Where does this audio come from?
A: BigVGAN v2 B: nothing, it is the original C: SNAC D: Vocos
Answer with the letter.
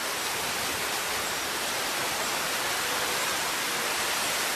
B